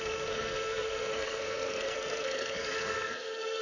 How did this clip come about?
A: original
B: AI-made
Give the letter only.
B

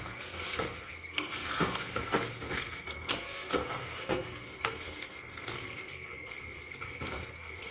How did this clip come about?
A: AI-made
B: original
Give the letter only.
A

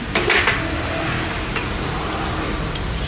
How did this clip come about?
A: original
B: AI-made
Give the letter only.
A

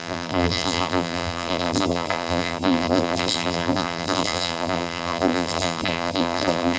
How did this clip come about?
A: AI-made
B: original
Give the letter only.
A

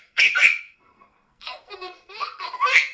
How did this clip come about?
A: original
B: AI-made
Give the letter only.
B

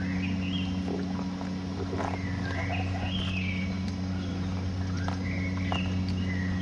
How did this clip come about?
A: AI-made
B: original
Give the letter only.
B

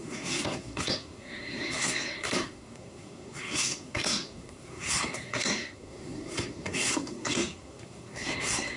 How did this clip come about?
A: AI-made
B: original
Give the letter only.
A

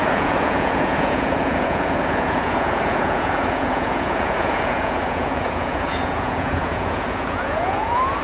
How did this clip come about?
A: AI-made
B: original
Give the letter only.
A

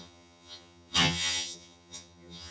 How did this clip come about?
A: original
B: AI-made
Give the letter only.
B